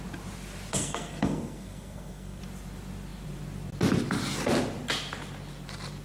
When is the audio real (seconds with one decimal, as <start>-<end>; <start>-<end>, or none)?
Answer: 0.0-0.7; 2.4-6.0